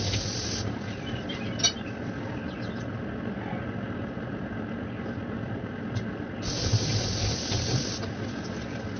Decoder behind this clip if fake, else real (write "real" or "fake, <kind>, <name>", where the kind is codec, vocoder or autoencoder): fake, vocoder, BigVGAN v2